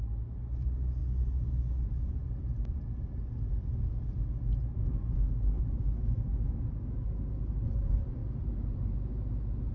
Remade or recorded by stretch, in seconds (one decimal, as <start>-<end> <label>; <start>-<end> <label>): 0.0-4.8 recorded; 4.8-5.6 remade; 5.6-9.7 recorded